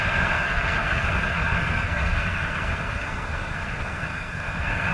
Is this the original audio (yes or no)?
no